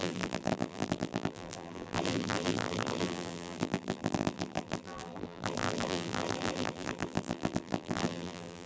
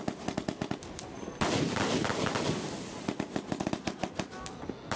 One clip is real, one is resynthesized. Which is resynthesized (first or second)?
first